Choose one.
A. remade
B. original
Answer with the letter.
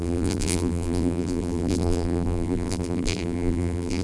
A